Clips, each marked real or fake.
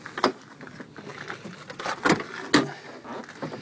real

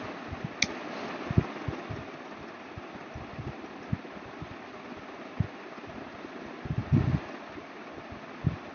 real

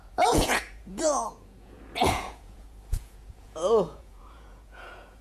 fake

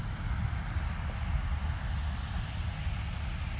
real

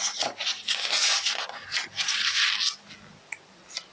real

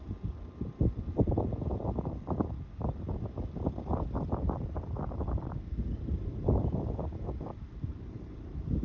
real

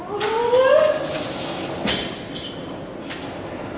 real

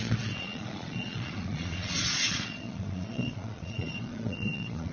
fake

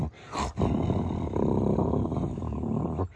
real